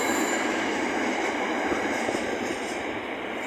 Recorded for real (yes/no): yes